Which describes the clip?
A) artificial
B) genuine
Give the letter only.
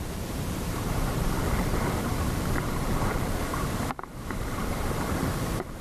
A